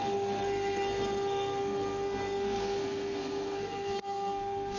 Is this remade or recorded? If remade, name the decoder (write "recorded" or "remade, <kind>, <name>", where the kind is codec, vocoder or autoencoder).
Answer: remade, codec, SNAC